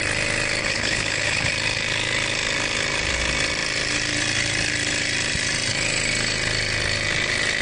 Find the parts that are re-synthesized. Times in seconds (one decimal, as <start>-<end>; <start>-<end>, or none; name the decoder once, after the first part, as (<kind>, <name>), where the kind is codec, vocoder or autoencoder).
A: 0.6-1.5 (codec, HILCodec)